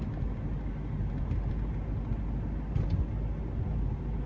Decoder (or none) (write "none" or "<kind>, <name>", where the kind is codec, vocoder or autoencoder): none